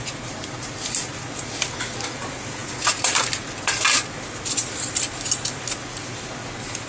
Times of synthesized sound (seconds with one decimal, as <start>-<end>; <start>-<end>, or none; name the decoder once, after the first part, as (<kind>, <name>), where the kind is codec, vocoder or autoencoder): none